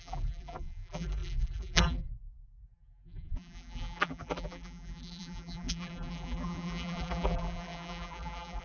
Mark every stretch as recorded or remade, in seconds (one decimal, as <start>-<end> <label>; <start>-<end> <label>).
0.0-8.6 remade